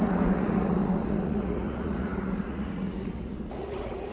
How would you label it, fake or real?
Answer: fake